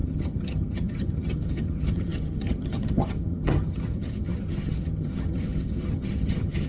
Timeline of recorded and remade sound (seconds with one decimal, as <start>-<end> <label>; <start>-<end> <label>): 0.0-6.7 remade